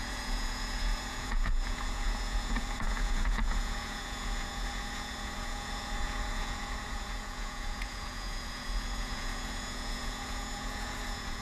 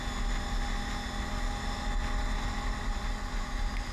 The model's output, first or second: first